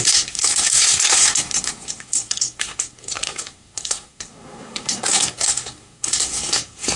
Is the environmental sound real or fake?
fake